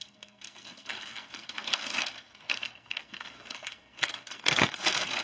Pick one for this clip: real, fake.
fake